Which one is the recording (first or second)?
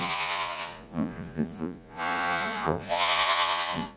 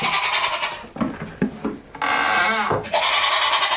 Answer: second